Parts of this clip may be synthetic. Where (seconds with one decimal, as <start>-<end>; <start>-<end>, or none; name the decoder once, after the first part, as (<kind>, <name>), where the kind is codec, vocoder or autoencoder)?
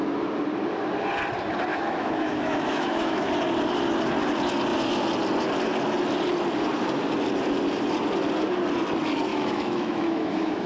1.7-3.3 (autoencoder, DAC-VAE); 9.3-10.7